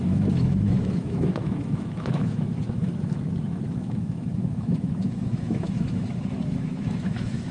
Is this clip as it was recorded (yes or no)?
no